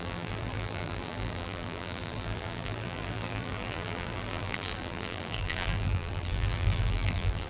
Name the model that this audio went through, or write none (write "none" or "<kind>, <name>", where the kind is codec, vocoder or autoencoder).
vocoder, BigVGAN v2